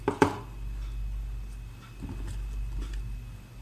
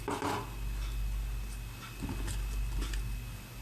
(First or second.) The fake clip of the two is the first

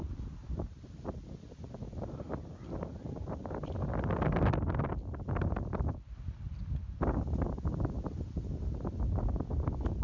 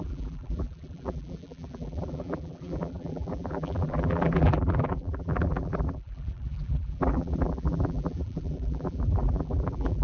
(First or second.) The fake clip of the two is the second